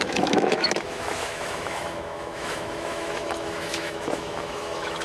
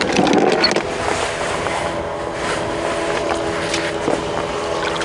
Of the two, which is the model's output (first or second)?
first